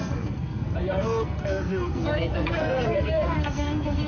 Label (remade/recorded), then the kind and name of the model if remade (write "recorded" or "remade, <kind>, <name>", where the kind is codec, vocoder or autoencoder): remade, codec, SNAC